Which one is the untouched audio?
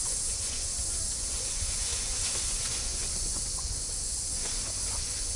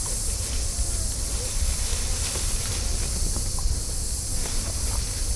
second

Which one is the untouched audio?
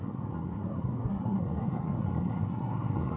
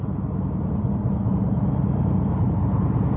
second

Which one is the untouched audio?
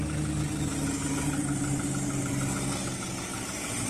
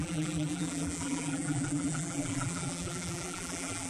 first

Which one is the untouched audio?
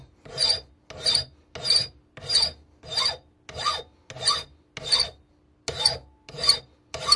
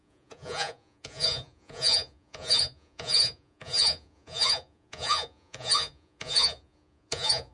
first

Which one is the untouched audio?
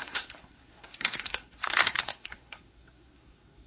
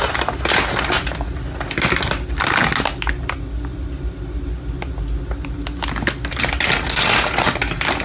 second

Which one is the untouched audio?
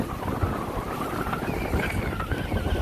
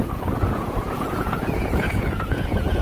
first